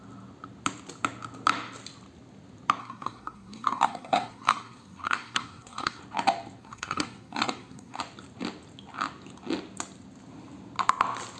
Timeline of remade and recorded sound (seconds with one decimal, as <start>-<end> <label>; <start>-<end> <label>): 0.0-2.8 recorded; 2.8-6.0 remade; 6.0-6.6 recorded; 6.6-8.0 remade; 8.0-11.4 recorded